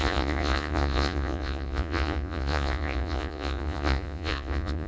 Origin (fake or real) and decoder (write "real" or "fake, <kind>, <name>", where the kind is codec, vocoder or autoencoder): fake, vocoder, Vocos